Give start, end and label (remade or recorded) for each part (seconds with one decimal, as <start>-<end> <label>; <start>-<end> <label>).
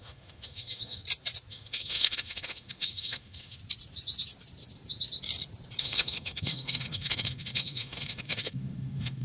0.0-1.0 remade; 1.0-1.5 recorded; 1.5-3.6 remade; 3.6-5.8 recorded; 5.8-9.2 remade